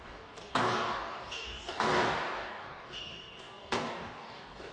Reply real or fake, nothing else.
fake